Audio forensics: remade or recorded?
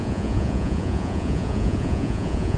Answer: remade